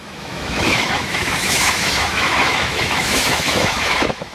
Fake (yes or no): yes